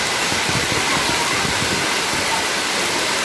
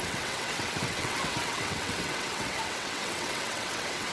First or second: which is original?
first